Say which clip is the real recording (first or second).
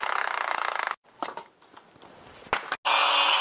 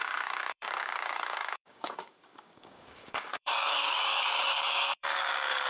first